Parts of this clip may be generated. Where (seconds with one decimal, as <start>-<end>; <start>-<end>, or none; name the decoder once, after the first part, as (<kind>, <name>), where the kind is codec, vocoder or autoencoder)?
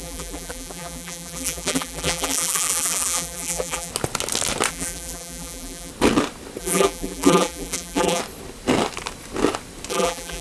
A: 0.0-3.9 (vocoder, BigVGAN v2); 4.7-5.9; 6.6-8.2; 9.9-10.4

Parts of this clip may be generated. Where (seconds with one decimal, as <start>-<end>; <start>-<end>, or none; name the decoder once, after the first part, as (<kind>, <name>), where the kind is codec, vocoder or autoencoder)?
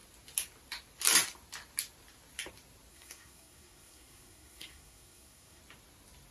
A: 2.9-5.6 (codec, SNAC)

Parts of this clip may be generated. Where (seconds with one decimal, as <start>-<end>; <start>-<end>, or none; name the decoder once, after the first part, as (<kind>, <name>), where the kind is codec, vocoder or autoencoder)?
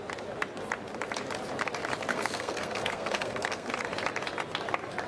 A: 2.1-3.7 (codec, SNAC)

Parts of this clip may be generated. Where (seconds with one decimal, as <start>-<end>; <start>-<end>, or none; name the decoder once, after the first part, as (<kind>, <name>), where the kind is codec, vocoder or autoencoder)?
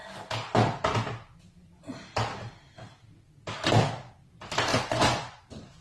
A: 4.7-5.8 (vocoder, Vocos)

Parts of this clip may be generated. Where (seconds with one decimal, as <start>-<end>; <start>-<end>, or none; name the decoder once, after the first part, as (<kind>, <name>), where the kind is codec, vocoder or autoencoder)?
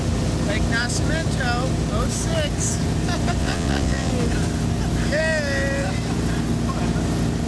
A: 3.4-4.1 (vocoder, WaveNeXt)